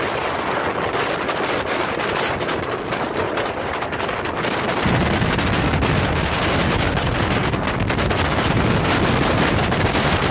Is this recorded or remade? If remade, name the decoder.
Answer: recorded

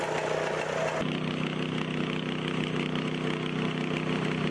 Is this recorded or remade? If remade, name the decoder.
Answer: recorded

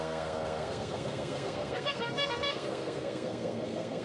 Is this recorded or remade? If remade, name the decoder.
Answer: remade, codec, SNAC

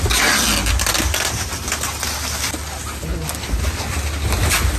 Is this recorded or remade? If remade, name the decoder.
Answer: recorded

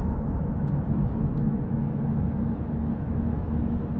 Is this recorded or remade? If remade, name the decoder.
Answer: remade, autoencoder, DAC-VAE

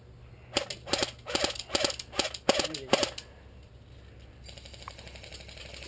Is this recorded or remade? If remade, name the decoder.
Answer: recorded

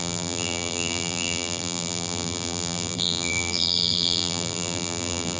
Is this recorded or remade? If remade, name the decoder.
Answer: remade, vocoder, BigVGAN v2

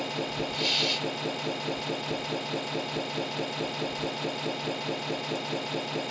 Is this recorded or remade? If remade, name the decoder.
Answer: recorded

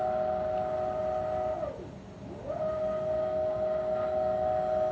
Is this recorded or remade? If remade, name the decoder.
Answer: recorded